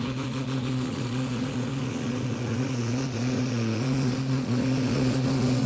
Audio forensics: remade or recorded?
remade